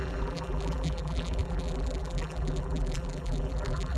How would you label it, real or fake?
fake